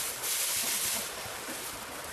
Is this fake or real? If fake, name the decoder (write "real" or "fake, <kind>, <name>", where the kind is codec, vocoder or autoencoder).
real